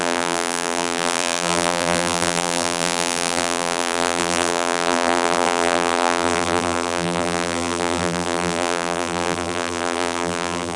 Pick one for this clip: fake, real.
fake